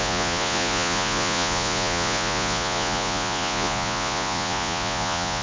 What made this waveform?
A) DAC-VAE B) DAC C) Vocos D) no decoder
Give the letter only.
C